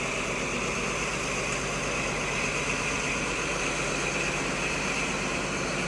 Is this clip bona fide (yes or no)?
yes